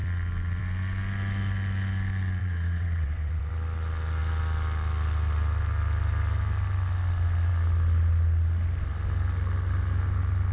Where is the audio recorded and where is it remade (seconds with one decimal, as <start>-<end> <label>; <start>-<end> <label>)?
0.0-2.4 recorded; 2.4-3.5 remade; 3.5-10.5 recorded